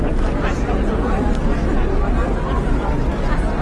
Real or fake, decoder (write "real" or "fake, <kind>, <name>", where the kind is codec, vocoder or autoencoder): real